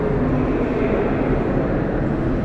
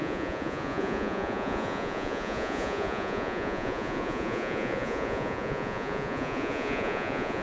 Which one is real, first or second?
first